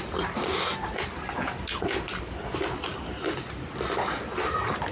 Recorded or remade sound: recorded